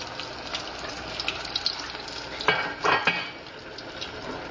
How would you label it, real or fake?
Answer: real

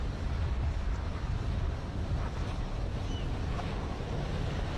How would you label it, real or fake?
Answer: real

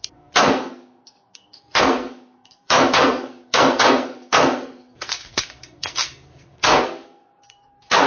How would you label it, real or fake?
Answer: fake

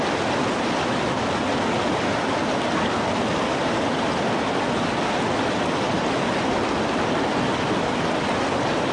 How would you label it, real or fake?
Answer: real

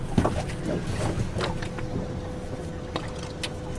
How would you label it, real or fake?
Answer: real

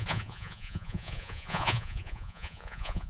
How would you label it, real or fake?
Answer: fake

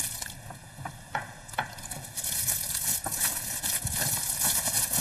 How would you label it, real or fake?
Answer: fake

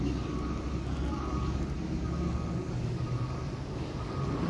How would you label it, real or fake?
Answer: fake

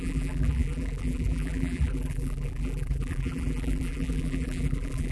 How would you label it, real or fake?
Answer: fake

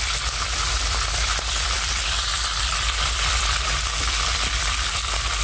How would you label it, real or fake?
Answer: real